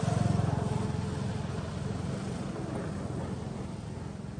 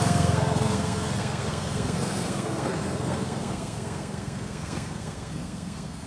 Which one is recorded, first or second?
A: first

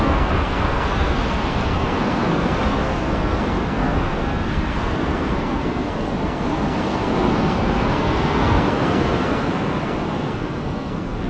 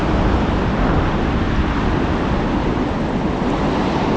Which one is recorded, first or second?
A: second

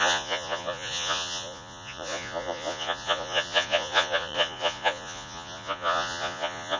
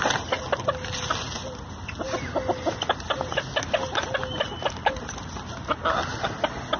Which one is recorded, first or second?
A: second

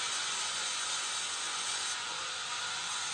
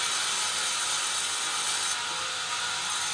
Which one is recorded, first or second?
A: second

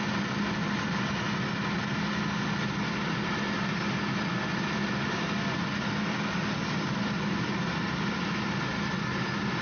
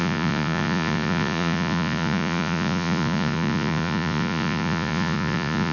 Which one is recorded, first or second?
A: first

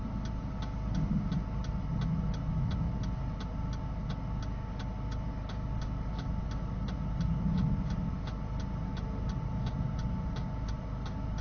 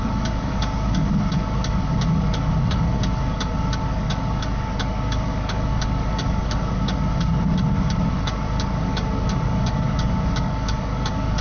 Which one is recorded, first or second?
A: first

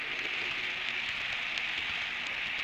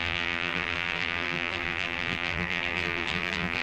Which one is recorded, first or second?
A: first